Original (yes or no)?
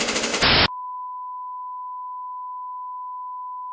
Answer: yes